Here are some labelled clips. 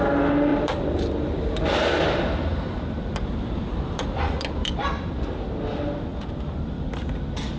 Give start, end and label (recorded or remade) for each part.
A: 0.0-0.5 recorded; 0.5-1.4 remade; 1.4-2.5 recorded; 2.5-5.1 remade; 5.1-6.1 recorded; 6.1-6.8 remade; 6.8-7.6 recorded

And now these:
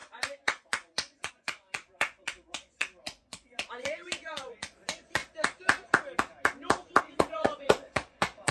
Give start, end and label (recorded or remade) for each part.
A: 0.0-5.2 remade; 5.2-7.0 recorded; 7.0-8.5 remade

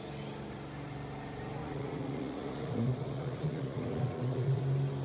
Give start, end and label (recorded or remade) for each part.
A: 0.0-1.6 recorded; 1.6-4.6 remade; 4.6-5.0 recorded

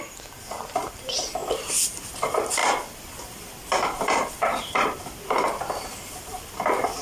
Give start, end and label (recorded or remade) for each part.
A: 0.0-7.0 recorded

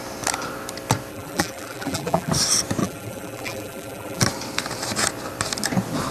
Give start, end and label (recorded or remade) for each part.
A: 0.0-1.1 recorded; 1.1-2.3 remade; 2.3-2.8 recorded; 2.8-4.2 remade; 4.2-6.1 recorded

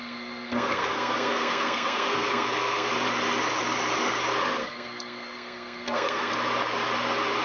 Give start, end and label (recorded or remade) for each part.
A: 0.0-2.9 remade; 2.9-4.6 recorded; 4.6-6.3 remade; 6.3-7.4 recorded